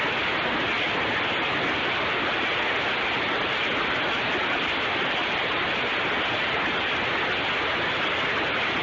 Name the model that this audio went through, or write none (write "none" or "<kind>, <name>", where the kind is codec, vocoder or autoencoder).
none